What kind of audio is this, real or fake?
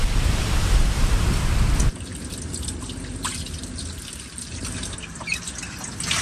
real